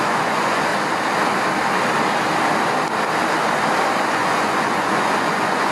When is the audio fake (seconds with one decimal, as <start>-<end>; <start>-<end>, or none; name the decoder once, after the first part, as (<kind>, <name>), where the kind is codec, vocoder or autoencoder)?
0.0-0.7 (vocoder, Vocos); 4.1-5.7